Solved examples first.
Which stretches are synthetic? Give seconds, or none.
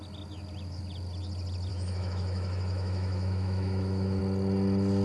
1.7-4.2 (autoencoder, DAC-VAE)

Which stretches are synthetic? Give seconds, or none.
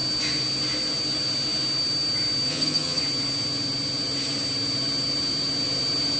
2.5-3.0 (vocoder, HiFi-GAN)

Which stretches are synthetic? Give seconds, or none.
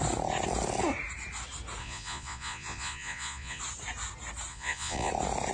1.8-3.6 (vocoder, Vocos); 4.5-5.1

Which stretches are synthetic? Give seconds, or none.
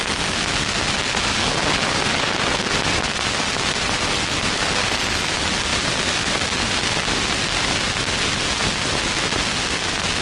5.7-7.9 (vocoder, BigVGAN v2)